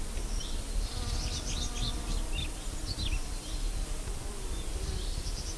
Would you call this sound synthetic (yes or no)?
no